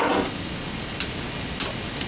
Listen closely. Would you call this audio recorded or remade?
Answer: recorded